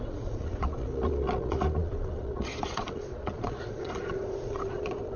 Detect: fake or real fake